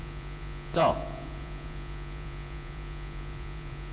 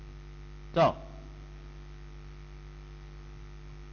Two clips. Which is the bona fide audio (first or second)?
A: second